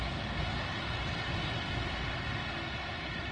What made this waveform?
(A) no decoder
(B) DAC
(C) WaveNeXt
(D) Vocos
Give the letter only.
A